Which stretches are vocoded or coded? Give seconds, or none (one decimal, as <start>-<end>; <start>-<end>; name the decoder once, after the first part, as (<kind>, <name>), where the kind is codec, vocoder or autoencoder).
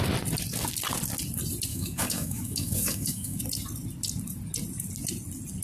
1.7-3.4 (autoencoder, DAC-VAE)